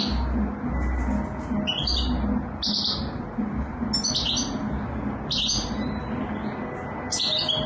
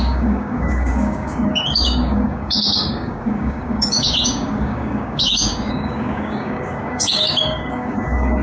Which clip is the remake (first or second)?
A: second